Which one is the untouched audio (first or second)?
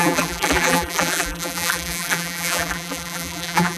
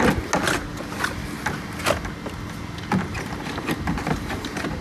second